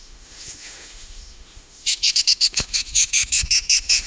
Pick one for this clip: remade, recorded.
remade